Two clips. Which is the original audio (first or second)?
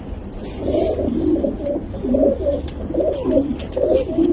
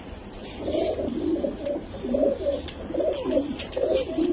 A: first